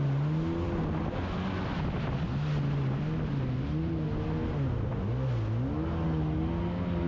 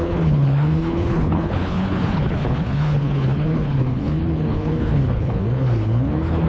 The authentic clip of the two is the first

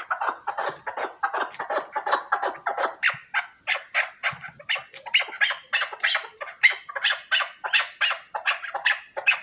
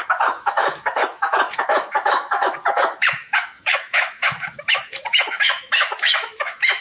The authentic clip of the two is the first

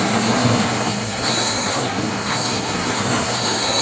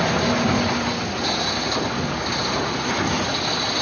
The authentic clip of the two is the second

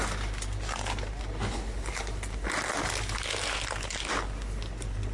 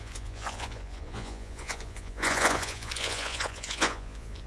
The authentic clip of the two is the first